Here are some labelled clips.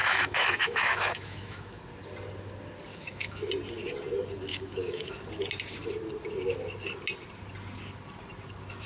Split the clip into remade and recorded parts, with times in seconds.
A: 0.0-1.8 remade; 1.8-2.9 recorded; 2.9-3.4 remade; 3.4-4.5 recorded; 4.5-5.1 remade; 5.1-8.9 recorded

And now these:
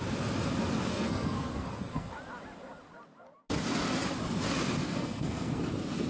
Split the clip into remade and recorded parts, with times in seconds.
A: 0.0-0.9 recorded; 0.9-2.1 remade; 2.1-4.8 recorded; 4.8-5.6 remade; 5.6-6.1 recorded

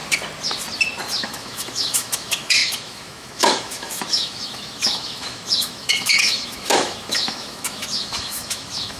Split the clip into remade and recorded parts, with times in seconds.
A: 0.0-1.2 recorded; 1.2-9.0 remade

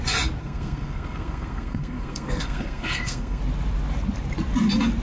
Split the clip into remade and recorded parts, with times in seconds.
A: 0.0-0.4 recorded; 0.4-3.4 remade; 3.4-5.0 recorded

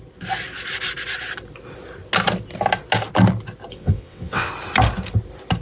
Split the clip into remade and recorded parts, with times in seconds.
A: 0.0-3.7 recorded; 3.7-4.5 remade; 4.5-5.6 recorded

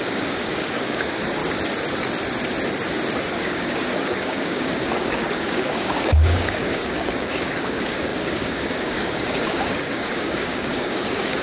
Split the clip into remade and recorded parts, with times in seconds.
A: 0.0-1.4 remade; 1.4-3.3 recorded; 3.3-11.4 remade

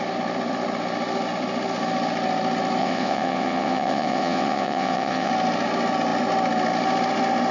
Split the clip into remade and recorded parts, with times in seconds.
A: 0.0-2.8 recorded; 2.8-5.3 remade; 5.3-7.5 recorded

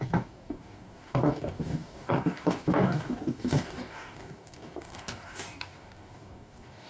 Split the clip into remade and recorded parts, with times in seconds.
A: 0.0-6.9 remade